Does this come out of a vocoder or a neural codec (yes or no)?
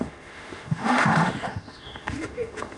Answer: yes